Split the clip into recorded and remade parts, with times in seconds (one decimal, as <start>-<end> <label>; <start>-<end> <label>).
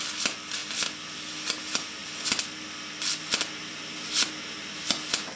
0.0-5.4 recorded